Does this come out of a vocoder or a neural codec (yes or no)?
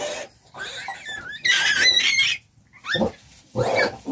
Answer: no